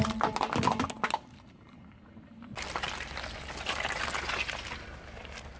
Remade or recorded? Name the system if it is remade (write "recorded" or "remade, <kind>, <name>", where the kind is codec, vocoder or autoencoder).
recorded